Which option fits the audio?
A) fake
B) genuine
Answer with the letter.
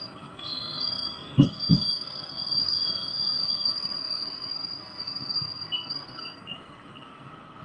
A